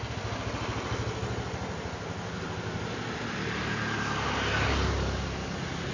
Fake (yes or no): no